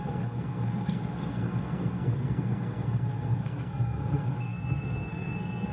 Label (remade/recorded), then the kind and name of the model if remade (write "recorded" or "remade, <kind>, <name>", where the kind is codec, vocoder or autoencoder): remade, codec, SNAC